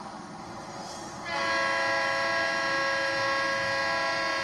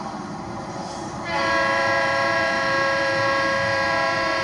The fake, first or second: second